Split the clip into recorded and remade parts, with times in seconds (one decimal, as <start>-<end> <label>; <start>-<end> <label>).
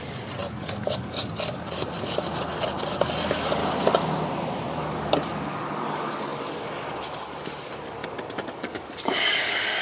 0.0-3.6 remade; 3.6-4.8 recorded; 4.8-9.8 remade